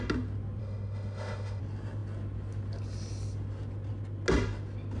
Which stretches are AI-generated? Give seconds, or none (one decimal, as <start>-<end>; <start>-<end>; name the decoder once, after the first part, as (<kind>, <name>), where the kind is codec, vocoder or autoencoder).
0.6-1.6 (autoencoder, DAC-VAE)

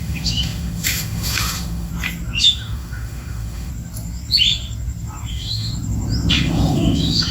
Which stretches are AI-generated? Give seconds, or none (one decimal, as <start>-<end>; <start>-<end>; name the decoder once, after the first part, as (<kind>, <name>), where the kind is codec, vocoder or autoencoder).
0.0-1.9 (autoencoder, DAC-VAE); 2.4-3.7; 5.3-5.7; 6.3-7.3